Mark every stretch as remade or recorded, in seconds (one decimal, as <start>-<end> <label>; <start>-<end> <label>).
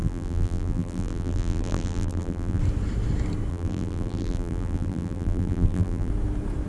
0.0-2.6 remade; 2.6-3.5 recorded; 3.5-6.1 remade; 6.1-6.7 recorded